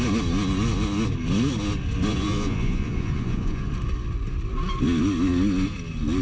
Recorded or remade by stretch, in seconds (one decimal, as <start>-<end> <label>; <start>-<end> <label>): 0.0-2.1 recorded; 2.1-3.7 remade; 3.7-6.2 recorded